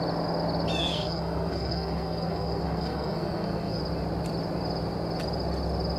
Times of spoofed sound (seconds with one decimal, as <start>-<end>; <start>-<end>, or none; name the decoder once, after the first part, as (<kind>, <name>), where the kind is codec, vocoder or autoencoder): 0.8-3.8 (codec, SNAC)